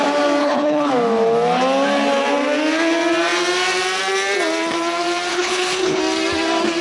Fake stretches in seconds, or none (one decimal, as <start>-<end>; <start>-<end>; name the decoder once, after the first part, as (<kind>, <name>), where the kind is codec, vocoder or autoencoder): 0.4-0.9 (codec, HILCodec); 5.3-6.0